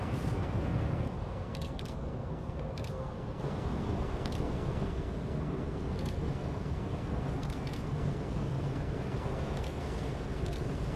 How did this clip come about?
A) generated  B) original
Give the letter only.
A